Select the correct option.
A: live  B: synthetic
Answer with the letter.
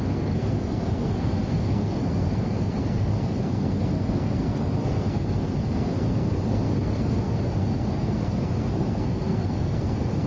B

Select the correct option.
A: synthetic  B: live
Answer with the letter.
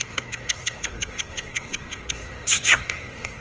A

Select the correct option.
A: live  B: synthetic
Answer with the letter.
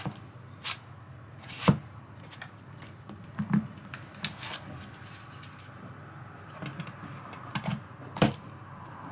A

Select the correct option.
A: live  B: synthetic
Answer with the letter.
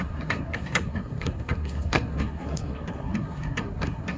B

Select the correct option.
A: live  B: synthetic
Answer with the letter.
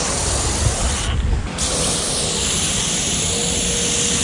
A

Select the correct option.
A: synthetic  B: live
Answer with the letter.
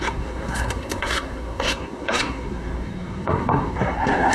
A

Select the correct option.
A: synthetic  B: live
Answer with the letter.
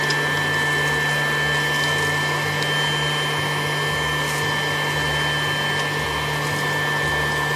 B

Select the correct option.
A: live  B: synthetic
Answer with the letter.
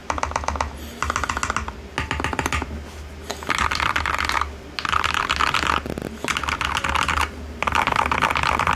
A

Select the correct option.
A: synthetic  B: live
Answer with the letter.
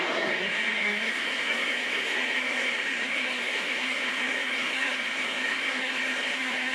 A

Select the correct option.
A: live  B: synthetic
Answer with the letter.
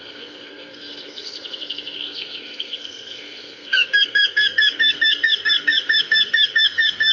B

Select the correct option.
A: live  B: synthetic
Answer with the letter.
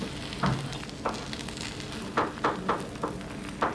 A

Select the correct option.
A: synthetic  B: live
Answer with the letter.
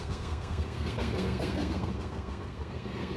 A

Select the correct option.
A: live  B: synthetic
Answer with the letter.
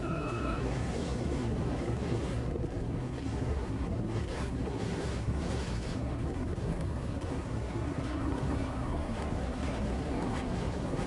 B